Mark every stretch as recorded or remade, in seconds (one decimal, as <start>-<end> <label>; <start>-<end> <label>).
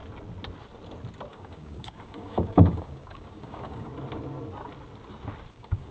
0.0-1.3 recorded; 1.3-3.9 remade; 3.9-5.5 recorded; 5.5-5.9 remade